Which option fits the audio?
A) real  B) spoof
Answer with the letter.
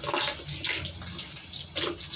A